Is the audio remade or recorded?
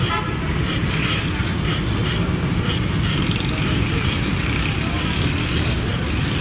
recorded